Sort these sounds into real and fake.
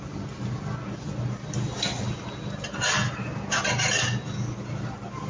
real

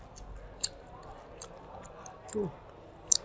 real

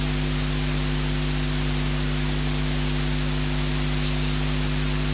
real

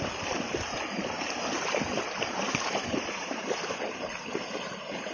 fake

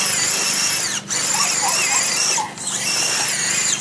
real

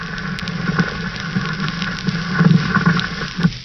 real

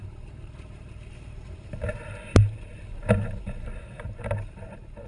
fake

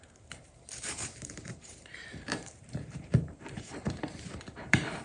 fake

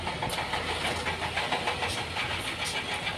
real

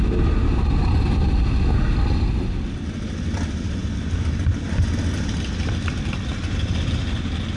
real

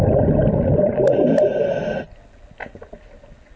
real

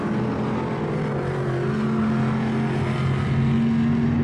real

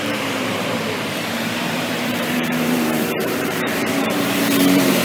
fake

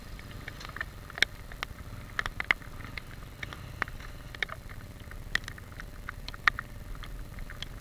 real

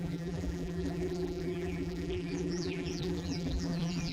fake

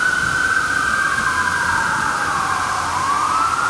fake